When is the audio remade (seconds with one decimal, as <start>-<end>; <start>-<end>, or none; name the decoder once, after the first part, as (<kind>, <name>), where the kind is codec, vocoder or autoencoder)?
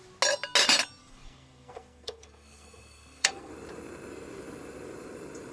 1.0-3.5 (codec, SNAC)